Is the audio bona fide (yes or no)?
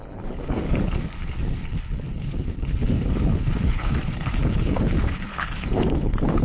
no